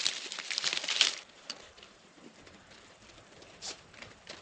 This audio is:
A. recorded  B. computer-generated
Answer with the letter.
B